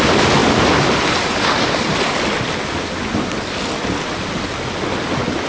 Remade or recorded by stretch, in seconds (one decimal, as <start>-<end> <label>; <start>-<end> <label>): 0.0-5.5 recorded